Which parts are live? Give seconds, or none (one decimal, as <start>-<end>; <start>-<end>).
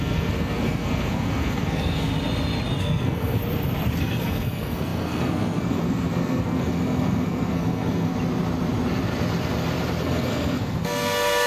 2.1-2.8; 3.4-4.0; 8.1-10.0